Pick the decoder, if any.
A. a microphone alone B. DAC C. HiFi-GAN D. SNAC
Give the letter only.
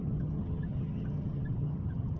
C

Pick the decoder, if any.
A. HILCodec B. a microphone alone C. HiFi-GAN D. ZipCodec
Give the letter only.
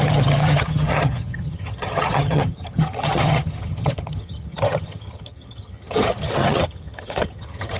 C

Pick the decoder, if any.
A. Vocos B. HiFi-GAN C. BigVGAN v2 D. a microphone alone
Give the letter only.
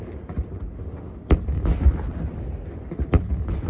D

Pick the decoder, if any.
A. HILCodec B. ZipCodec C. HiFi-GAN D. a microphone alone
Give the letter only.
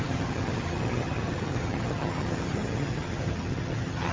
C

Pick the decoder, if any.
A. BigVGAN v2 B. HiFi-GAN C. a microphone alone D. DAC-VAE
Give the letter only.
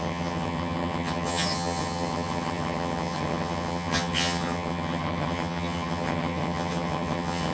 B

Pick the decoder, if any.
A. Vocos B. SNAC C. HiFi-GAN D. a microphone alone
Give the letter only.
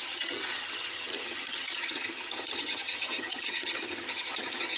C